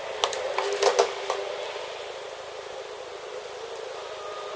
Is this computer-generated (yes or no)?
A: no